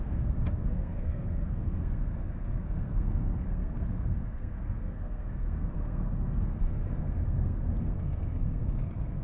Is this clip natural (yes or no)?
no